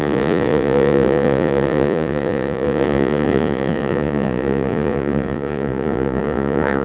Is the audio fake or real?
fake